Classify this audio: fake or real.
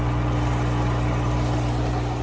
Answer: real